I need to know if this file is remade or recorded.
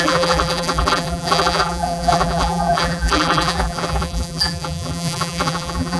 remade